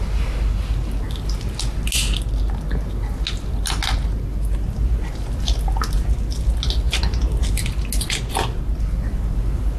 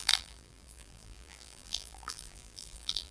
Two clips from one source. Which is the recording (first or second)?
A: first